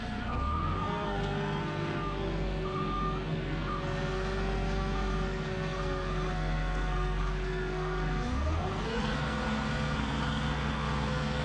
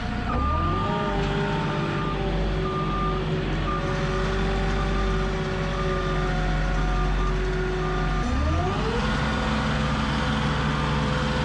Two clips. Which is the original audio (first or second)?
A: second